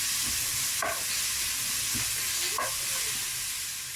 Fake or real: real